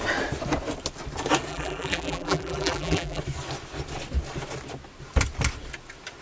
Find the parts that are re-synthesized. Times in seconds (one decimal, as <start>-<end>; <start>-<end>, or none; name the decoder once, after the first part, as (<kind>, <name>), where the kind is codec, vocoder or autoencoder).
1.5-3.2 (vocoder, BigVGAN v2)